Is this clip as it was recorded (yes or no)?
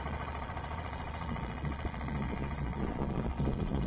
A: no